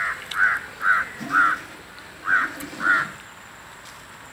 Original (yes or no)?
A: yes